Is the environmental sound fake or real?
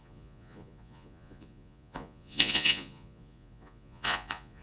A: fake